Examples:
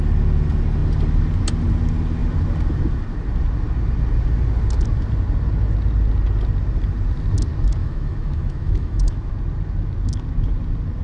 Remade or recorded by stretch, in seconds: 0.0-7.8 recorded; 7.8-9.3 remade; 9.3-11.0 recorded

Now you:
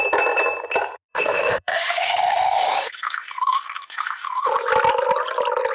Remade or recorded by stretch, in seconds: 0.0-1.1 recorded; 1.1-4.5 remade; 4.5-5.7 recorded

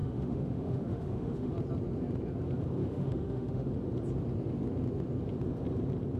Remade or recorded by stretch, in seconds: 0.0-1.5 remade; 1.5-2.8 recorded; 2.8-3.7 remade; 3.7-6.2 recorded